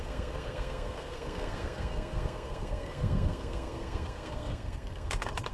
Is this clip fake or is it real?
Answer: fake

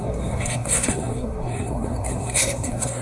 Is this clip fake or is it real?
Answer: fake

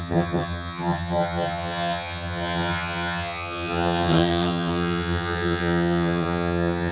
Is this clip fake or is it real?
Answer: fake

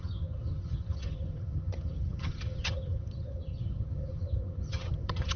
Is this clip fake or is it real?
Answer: fake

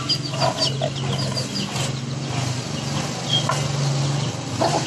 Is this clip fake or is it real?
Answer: real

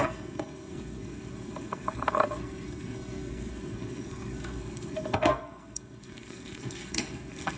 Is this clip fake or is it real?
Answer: fake